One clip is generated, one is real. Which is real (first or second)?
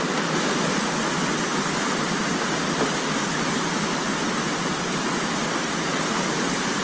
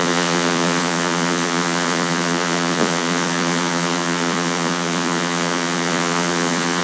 first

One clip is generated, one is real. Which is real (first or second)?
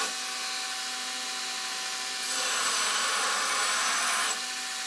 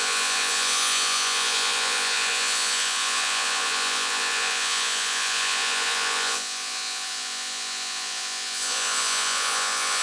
first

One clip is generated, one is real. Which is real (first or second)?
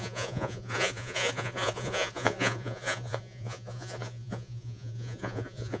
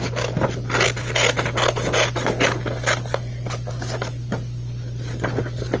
second